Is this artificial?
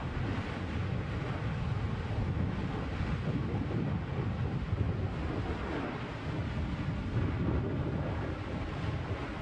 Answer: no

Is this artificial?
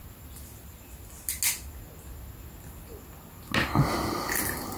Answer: no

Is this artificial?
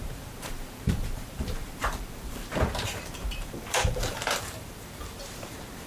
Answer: yes